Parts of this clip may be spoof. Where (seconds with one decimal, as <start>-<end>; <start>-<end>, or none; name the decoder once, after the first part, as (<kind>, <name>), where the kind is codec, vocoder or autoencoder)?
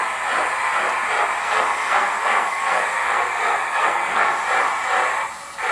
1.4-4.4 (codec, SNAC)